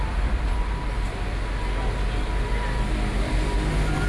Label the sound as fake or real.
real